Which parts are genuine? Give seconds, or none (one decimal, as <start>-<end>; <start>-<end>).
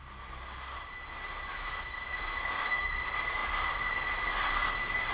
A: 0.0-1.5; 3.0-5.1